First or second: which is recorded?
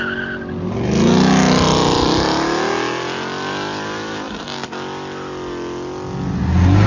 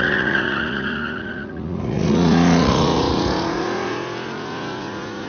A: first